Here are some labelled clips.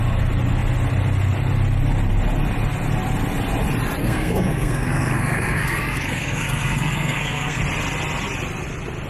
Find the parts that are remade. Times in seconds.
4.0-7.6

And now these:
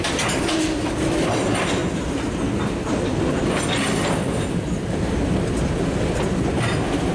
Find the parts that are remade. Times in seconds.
none

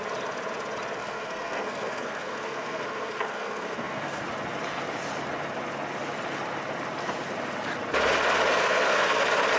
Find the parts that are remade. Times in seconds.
1.0-4.2; 8.5-9.2

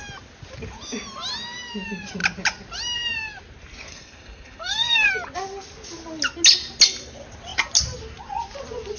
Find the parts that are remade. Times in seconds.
3.9-5.1

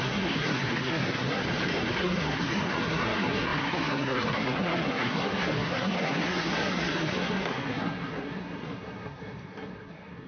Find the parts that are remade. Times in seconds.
0.0-1.4; 1.9-10.3

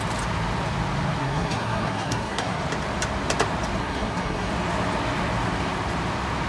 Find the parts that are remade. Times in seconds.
1.2-2.6; 3.8-4.5